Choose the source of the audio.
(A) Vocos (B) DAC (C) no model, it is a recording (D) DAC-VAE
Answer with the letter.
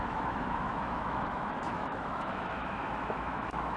D